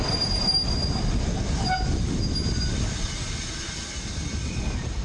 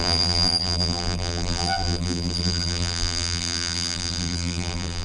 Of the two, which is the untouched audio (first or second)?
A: first